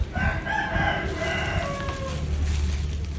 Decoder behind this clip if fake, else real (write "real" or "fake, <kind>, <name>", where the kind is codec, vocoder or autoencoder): real